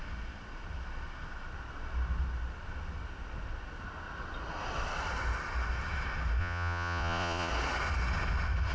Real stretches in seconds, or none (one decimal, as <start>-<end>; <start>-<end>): 0.0-6.4; 7.5-8.7